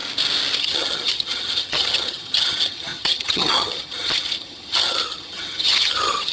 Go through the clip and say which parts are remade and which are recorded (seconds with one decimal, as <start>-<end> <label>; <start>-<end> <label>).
0.0-0.6 recorded; 0.6-6.3 remade